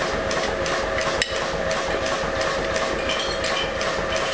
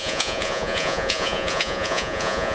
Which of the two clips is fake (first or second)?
second